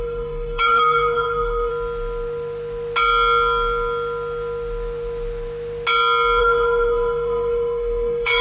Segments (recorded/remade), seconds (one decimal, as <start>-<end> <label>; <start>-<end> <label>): 0.0-1.7 remade; 1.7-6.4 recorded; 6.4-8.4 remade